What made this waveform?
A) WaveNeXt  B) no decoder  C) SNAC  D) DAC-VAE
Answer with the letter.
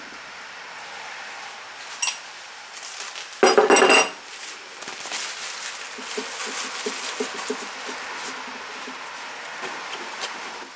B